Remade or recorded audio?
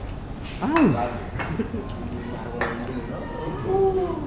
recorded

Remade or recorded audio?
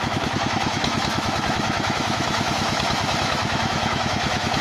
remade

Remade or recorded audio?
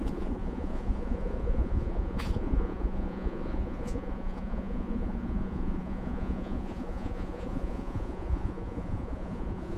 remade